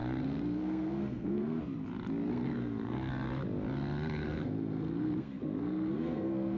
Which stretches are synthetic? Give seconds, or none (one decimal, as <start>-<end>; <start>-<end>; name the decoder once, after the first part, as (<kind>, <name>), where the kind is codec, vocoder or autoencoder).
0.0-1.6 (codec, SNAC); 2.3-3.1; 4.2-6.6